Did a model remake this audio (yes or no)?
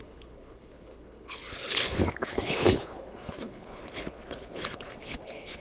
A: yes